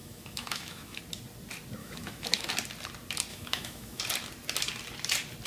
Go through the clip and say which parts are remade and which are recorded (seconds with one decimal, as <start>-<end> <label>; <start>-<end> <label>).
0.0-1.0 remade; 1.0-1.8 recorded; 1.8-2.5 remade; 2.5-3.3 recorded; 3.3-4.0 remade; 4.0-5.5 recorded